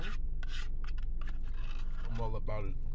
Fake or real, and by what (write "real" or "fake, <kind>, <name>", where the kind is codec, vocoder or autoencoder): real